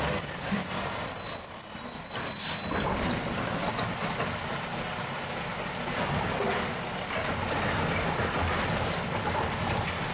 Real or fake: real